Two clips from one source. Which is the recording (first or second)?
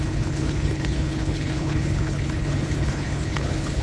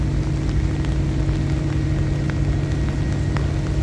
second